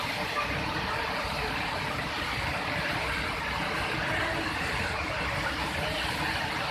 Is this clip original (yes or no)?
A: yes